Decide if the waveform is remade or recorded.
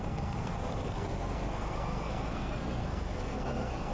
remade